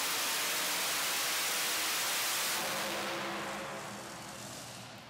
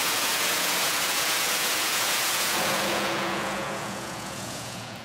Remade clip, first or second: second